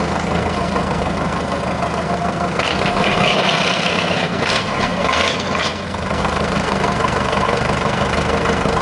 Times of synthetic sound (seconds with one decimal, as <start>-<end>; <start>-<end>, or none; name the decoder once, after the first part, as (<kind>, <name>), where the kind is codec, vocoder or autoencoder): 0.0-8.8 (codec, SNAC)